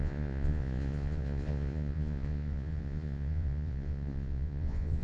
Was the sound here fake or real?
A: fake